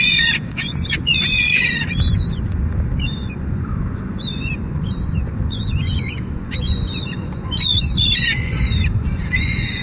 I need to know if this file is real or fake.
fake